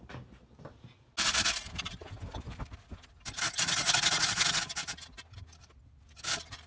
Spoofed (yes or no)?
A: no